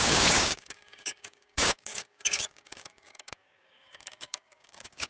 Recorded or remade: remade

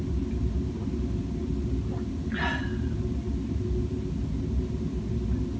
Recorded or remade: recorded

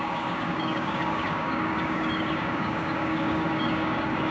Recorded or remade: remade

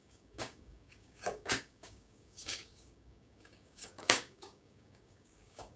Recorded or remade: remade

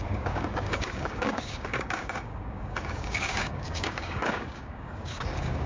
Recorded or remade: remade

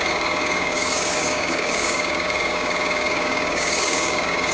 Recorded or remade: remade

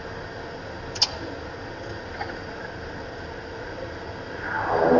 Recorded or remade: recorded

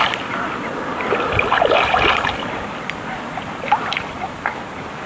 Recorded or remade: recorded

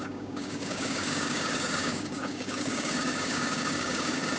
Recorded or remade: remade